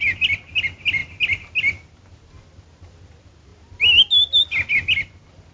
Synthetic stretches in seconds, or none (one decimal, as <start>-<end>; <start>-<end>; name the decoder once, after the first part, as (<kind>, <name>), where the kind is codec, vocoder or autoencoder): none